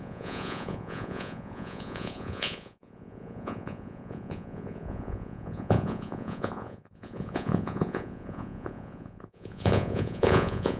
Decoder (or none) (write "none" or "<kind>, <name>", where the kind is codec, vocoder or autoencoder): vocoder, Vocos